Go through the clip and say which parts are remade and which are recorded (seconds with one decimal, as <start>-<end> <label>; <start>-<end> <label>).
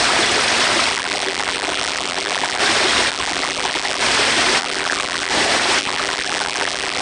0.0-0.9 recorded; 0.9-2.6 remade; 2.6-3.1 recorded; 3.1-4.0 remade; 4.0-4.6 recorded; 4.6-5.3 remade; 5.3-5.8 recorded; 5.8-7.0 remade